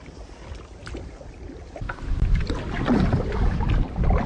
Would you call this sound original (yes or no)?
yes